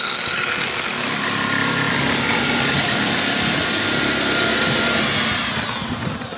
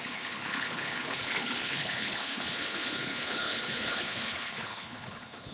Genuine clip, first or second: first